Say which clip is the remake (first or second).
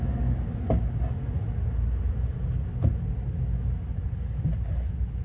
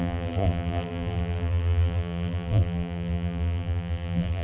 second